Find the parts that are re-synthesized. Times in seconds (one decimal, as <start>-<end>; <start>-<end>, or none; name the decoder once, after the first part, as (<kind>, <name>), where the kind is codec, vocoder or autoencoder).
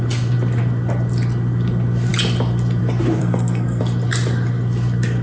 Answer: 3.2-3.8 (codec, SNAC)